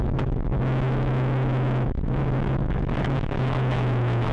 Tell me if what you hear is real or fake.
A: fake